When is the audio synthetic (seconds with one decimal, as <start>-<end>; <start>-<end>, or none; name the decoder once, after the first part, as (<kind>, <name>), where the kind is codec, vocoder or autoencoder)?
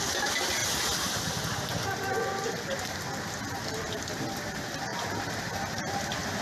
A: none